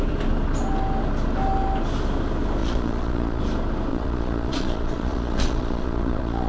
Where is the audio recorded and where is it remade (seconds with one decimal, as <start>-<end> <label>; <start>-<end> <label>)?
0.0-2.6 recorded; 2.6-3.4 remade; 3.4-3.9 recorded; 3.9-6.5 remade